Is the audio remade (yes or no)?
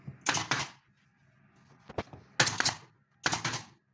no